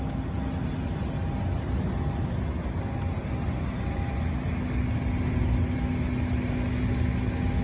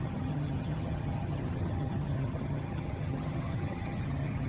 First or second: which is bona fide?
first